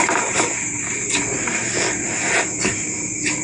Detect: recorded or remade recorded